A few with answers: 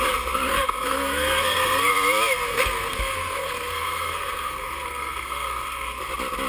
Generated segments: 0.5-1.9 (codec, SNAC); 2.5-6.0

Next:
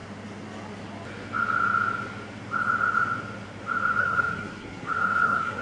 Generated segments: 4.0-5.6 (codec, SNAC)

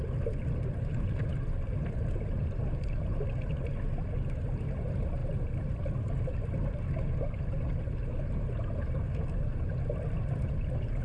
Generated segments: none

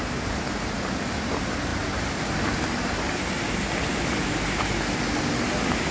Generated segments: none

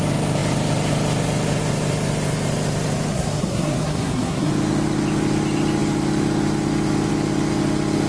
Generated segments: 3.1-4.5 (codec, SNAC)

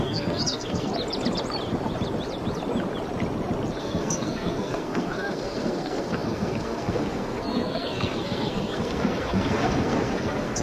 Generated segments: 0.0-0.9 (codec, SNAC); 3.8-10.6

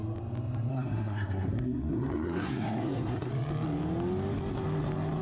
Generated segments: 0.7-3.3 (codec, SNAC)